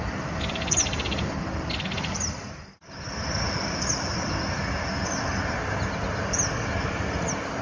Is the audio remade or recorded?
recorded